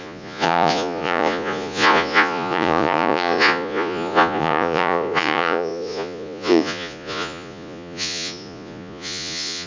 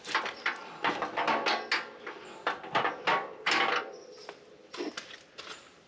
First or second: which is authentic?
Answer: second